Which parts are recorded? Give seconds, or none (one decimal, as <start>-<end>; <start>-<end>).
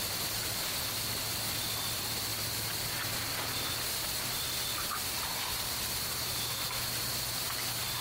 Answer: 0.0-8.0